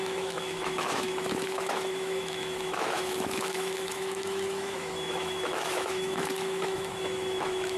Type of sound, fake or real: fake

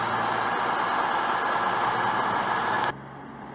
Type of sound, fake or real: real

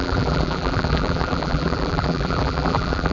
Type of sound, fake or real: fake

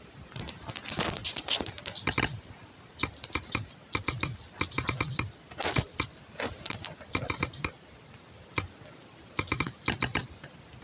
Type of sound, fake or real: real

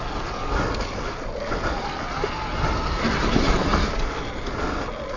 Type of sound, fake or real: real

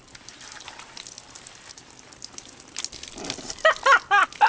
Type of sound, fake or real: real